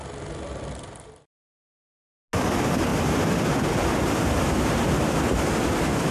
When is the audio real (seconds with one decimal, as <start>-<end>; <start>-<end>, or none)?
0.0-6.1